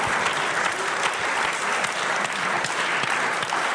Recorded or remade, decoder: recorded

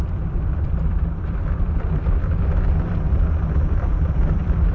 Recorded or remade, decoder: remade, vocoder, BigVGAN v2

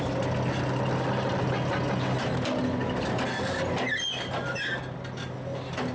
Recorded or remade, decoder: recorded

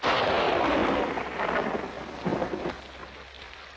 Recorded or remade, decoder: recorded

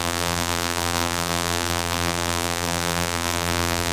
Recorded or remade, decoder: remade, vocoder, BigVGAN v2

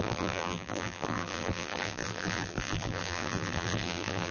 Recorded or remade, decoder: remade, vocoder, BigVGAN v2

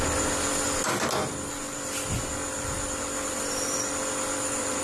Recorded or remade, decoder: recorded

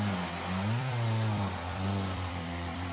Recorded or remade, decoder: remade, vocoder, BigVGAN v2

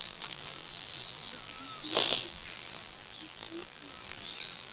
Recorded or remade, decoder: remade, vocoder, BigVGAN v2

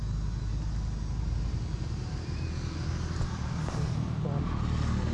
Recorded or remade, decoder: recorded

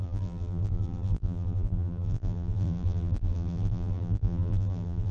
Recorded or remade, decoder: remade, vocoder, BigVGAN v2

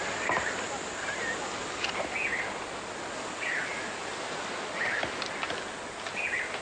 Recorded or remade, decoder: recorded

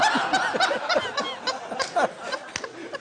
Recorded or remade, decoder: recorded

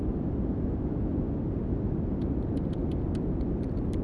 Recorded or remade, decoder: recorded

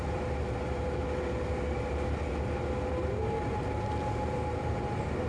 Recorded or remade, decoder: recorded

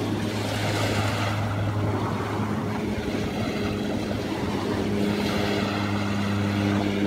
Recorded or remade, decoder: recorded